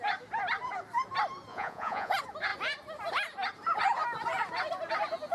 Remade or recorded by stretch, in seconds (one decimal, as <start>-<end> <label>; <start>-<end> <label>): 0.0-1.5 recorded; 1.5-2.1 remade; 2.1-5.3 recorded